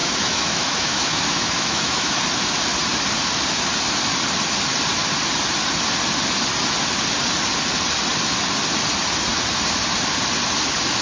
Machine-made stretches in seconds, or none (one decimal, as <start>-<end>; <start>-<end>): 0.0-2.2